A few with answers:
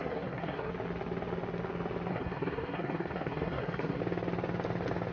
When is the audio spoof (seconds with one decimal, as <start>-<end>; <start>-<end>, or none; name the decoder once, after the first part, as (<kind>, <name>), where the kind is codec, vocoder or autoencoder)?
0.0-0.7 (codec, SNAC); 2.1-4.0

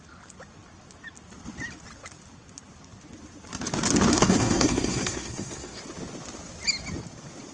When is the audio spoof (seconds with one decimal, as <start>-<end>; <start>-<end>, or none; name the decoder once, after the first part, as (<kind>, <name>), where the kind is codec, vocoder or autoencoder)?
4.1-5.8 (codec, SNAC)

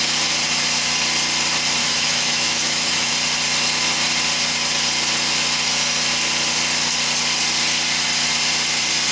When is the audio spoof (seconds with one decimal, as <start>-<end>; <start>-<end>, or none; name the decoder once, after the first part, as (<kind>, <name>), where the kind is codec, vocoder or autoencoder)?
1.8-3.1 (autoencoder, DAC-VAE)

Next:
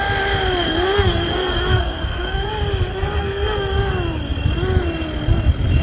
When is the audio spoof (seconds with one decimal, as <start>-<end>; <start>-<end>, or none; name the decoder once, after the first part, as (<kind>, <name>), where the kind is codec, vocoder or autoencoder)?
0.6-2.5 (codec, SNAC); 2.9-3.9